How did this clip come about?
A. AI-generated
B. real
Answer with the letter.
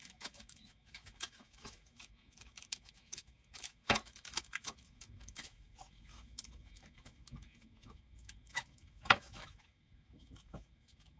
A